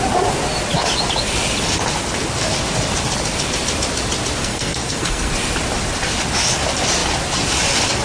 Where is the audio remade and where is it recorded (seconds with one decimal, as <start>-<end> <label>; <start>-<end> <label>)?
0.0-4.4 recorded; 4.4-5.3 remade; 5.3-8.0 recorded